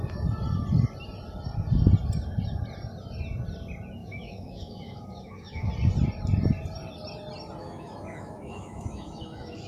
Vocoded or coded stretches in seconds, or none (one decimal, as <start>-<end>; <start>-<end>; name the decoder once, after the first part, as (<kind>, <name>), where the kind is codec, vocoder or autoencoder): 4.0-5.7 (autoencoder, DAC-VAE); 7.6-9.7